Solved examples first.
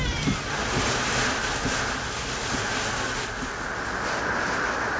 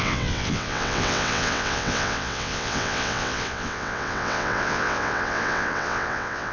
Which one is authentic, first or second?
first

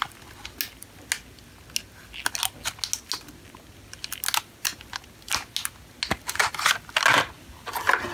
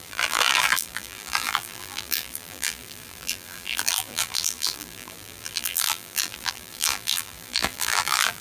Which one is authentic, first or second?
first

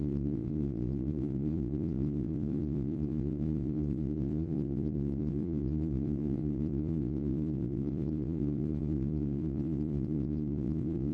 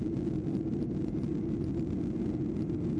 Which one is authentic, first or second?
second